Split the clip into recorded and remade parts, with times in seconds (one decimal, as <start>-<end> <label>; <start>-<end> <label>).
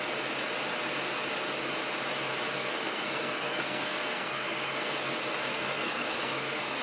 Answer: 0.0-2.6 recorded; 2.6-5.1 remade; 5.1-5.5 recorded; 5.5-6.8 remade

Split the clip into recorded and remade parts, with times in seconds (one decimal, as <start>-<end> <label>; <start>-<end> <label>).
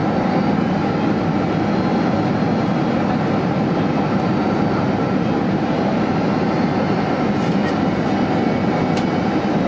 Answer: 0.0-9.7 recorded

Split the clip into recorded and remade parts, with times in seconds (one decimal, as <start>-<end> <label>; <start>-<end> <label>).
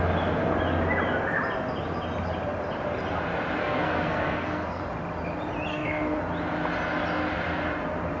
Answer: 0.0-3.6 recorded; 3.6-4.8 remade; 4.8-5.7 recorded; 5.7-6.2 remade; 6.2-8.2 recorded